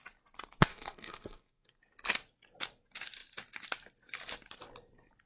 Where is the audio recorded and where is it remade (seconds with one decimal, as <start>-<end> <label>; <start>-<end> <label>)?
0.0-0.7 recorded; 0.7-1.8 remade; 1.8-5.3 recorded